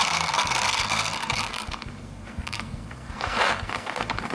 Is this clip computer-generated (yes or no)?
yes